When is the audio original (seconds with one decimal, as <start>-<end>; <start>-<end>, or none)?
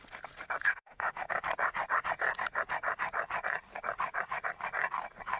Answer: 0.0-0.7; 1.4-5.4